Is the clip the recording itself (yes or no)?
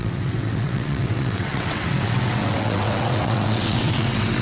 no